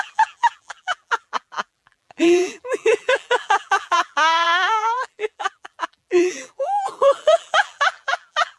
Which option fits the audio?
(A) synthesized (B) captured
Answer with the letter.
A